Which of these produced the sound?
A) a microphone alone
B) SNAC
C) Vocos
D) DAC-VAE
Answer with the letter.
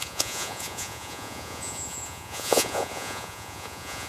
C